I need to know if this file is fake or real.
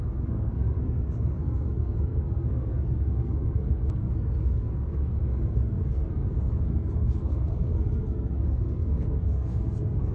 fake